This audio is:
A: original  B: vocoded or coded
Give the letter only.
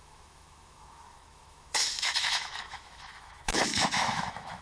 B